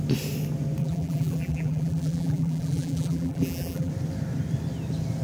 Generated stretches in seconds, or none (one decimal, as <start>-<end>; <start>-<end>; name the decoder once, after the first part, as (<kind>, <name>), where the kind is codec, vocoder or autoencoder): 0.8-3.9 (vocoder, BigVGAN v2)